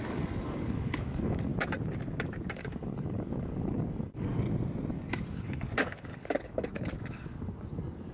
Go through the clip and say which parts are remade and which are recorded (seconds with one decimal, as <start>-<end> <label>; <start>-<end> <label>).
0.0-1.5 remade; 1.5-2.5 recorded; 2.5-4.3 remade; 4.3-4.9 recorded; 4.9-8.1 remade